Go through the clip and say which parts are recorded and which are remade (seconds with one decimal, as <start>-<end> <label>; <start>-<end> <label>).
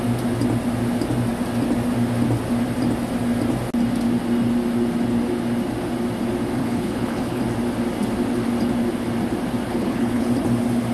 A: 0.0-6.6 recorded; 6.6-7.4 remade; 7.4-9.7 recorded; 9.7-10.3 remade; 10.3-10.9 recorded